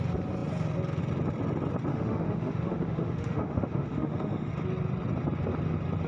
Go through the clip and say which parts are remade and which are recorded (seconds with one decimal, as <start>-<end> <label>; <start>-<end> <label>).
0.0-1.9 recorded; 1.9-4.5 remade; 4.5-6.1 recorded